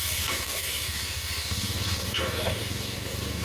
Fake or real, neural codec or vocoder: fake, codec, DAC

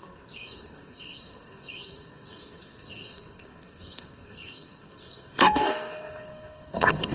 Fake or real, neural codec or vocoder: fake, codec, SNAC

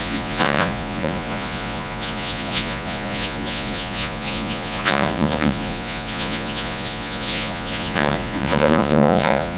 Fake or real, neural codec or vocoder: fake, vocoder, Vocos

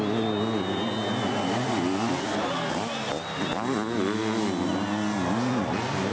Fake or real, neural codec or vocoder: real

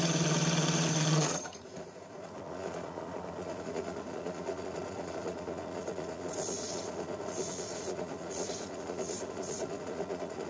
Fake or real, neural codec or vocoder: fake, vocoder, Vocos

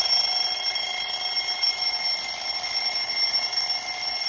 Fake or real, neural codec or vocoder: real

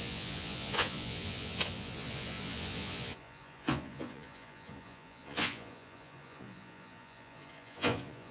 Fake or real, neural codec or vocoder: fake, vocoder, Vocos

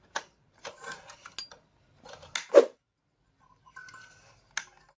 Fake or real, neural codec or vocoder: real